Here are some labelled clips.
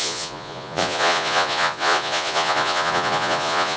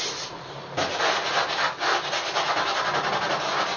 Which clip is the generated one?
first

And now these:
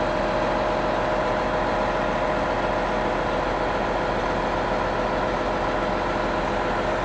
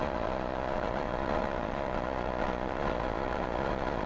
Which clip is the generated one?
second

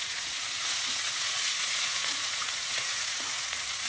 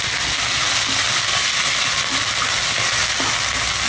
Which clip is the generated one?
first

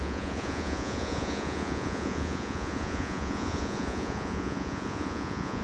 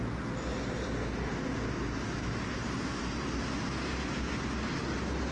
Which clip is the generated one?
first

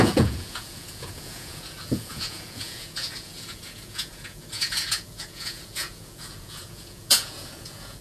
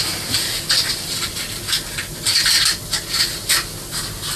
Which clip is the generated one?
first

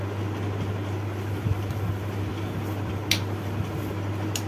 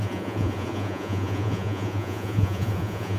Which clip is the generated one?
second